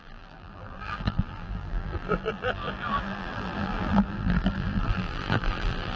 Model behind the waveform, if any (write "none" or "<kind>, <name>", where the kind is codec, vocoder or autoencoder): vocoder, BigVGAN v2